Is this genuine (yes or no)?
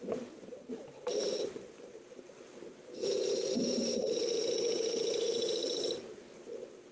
no